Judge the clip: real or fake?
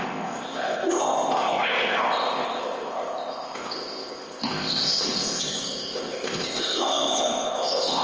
fake